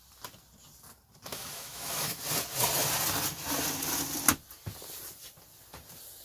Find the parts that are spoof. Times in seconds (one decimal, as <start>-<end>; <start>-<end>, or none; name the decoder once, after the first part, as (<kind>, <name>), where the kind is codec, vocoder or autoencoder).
1.3-2.2 (autoencoder, DAC-VAE)